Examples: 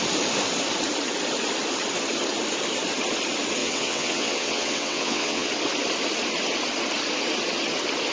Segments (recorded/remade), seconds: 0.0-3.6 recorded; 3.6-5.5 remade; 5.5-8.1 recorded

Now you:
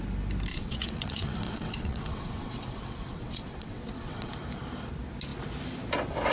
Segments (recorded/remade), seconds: 0.0-0.5 recorded; 0.5-4.3 remade; 4.3-6.3 recorded

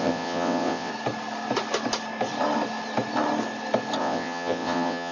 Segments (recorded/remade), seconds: 0.0-0.9 remade; 0.9-4.0 recorded; 4.0-5.1 remade

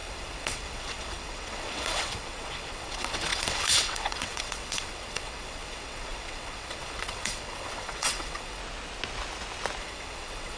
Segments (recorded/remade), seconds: 0.0-8.6 remade; 8.6-9.8 recorded; 9.8-10.6 remade

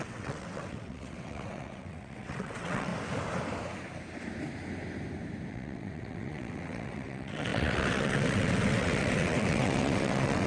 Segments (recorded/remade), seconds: 0.0-2.9 remade; 2.9-5.5 recorded; 5.5-10.5 remade

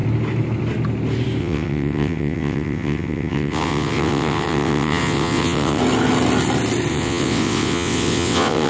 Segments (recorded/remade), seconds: 0.0-1.4 recorded; 1.4-5.8 remade; 5.8-6.9 recorded; 6.9-8.7 remade

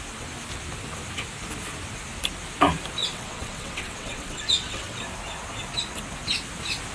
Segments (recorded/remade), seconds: 0.0-3.0 recorded; 3.0-5.0 remade; 5.0-6.9 recorded

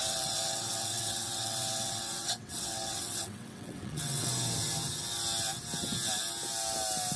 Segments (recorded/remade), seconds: 0.0-4.3 remade; 4.3-7.2 recorded